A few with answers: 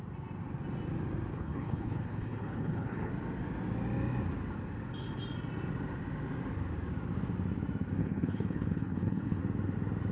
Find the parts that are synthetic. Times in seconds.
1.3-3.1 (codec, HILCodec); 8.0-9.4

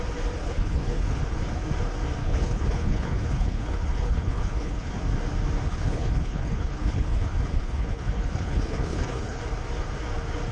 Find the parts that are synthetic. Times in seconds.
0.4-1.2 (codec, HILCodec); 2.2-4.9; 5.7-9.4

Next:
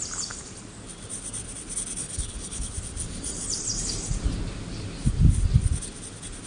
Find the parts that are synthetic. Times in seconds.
2.0-2.7 (codec, HILCodec)

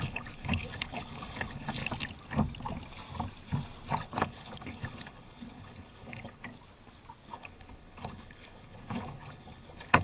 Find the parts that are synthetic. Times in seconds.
0.0-1.8 (codec, HILCodec); 3.9-6.5; 7.3-10.0

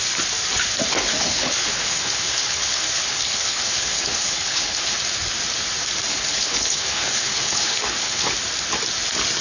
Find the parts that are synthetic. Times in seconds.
0.9-5.0 (codec, HILCodec); 6.1-8.3